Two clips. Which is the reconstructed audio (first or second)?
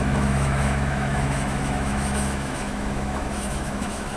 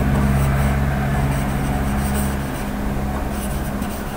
first